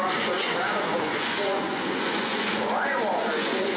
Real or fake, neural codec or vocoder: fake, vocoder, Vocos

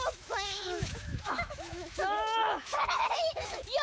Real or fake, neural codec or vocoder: fake, autoencoder, DAC-VAE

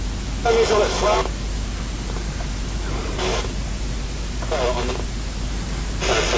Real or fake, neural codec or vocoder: real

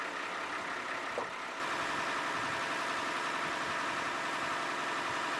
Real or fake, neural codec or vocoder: real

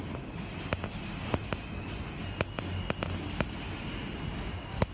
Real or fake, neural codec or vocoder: real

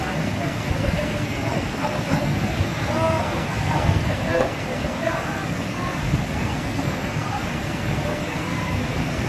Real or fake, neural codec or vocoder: fake, codec, SNAC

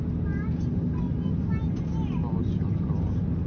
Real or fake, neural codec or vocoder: real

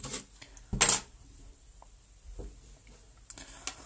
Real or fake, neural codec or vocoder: real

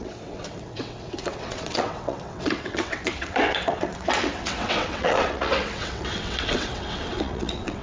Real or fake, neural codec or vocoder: fake, vocoder, WaveNeXt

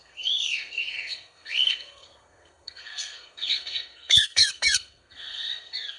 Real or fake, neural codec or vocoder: fake, codec, SNAC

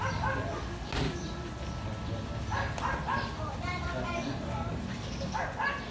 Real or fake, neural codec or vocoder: real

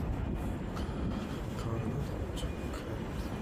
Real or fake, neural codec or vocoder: fake, vocoder, BigVGAN v2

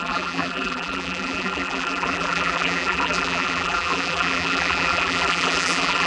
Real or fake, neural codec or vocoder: fake, vocoder, BigVGAN v2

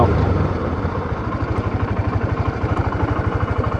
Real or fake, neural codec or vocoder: fake, vocoder, BigVGAN v2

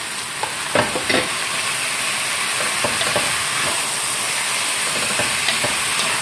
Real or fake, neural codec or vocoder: real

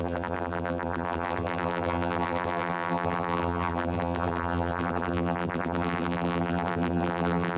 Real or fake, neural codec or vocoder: fake, vocoder, BigVGAN v2